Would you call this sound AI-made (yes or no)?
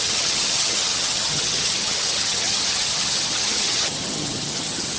yes